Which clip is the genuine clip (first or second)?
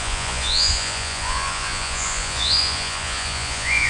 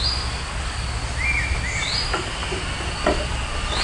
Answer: second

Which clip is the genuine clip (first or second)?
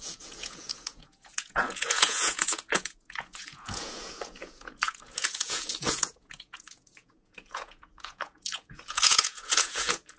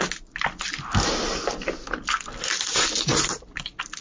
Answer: second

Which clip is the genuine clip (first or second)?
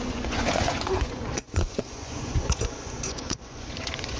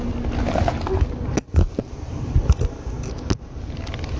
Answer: second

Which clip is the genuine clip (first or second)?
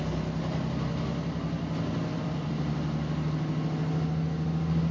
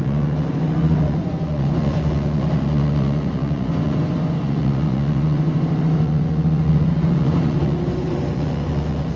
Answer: first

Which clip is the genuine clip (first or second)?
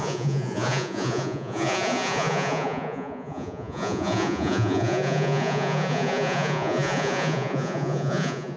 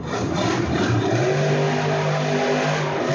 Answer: second